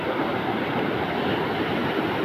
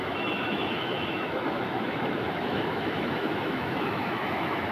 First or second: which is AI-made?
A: second